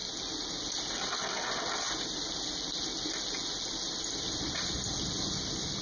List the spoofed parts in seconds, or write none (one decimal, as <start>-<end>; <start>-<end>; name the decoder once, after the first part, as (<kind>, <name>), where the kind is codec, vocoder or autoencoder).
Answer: none